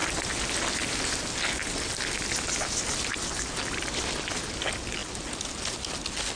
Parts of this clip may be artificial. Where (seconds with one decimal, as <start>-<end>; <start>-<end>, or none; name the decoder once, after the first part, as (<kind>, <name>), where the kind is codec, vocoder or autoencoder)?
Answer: none